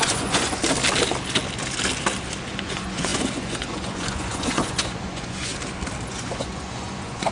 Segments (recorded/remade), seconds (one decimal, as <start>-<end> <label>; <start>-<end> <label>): 0.0-0.6 remade; 0.6-2.4 recorded; 2.4-5.5 remade; 5.5-6.1 recorded; 6.1-7.3 remade